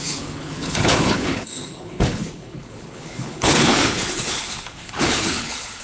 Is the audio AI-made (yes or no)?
yes